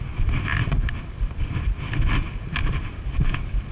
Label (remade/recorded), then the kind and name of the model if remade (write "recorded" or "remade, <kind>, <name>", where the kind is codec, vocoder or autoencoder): recorded